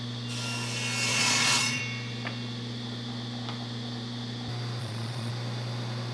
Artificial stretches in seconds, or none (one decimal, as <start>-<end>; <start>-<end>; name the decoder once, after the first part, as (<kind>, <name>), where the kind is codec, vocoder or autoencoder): 1.1-1.8 (vocoder, Vocos); 4.8-5.3